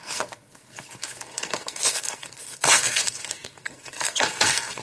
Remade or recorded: remade